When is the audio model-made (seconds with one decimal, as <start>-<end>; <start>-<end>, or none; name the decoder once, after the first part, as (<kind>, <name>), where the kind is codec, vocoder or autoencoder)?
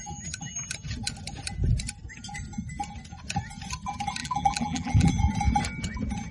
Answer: 4.2-5.1 (vocoder, BigVGAN v2)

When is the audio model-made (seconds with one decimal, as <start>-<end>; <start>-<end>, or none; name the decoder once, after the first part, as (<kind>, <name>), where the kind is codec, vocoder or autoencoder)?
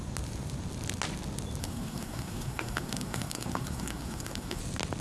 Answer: 1.6-4.6 (codec, SNAC)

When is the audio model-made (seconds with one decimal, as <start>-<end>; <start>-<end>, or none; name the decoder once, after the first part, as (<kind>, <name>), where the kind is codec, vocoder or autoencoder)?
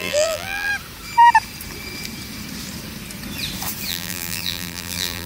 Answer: 0.0-0.7 (vocoder, BigVGAN v2); 3.9-5.3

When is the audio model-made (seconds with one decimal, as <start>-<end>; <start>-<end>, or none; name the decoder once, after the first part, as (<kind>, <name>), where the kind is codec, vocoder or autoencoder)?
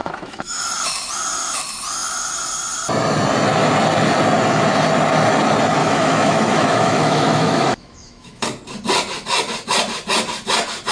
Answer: 0.0-0.6 (autoencoder, DAC-VAE); 5.8-8.4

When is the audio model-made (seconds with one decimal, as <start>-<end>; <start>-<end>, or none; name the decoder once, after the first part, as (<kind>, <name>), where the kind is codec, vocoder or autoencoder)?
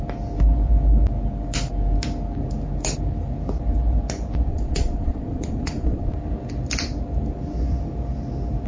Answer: 4.5-6.1 (vocoder, Vocos)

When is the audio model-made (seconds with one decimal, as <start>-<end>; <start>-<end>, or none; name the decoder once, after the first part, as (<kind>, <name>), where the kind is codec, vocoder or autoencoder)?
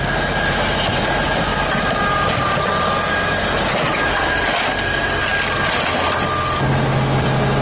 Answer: none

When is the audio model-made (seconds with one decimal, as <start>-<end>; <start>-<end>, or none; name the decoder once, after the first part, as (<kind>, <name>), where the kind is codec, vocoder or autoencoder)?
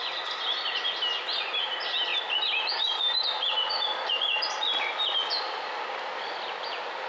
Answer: none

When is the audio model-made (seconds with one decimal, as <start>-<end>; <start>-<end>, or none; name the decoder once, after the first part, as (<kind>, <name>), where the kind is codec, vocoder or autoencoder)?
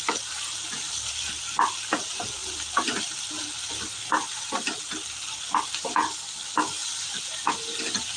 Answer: none